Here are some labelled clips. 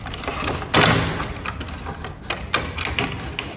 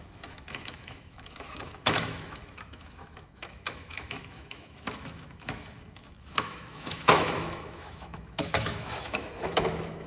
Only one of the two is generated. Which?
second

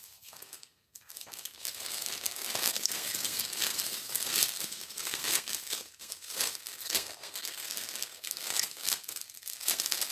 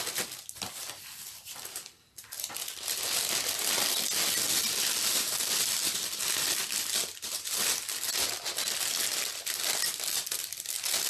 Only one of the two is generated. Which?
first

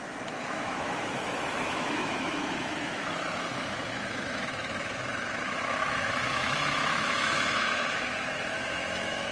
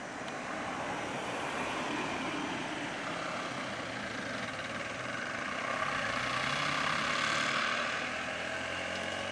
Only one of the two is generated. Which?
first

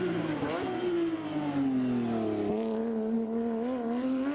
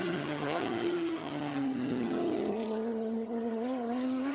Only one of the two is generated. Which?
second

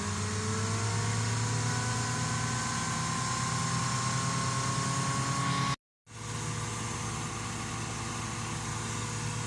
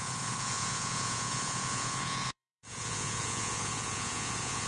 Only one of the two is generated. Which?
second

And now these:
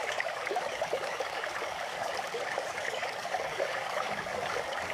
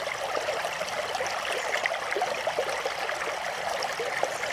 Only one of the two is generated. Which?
first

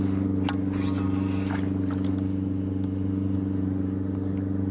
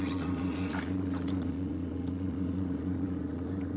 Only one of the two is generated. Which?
second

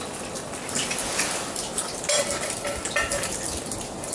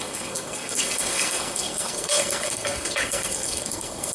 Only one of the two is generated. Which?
second